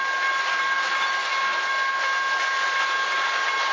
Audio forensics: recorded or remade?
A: recorded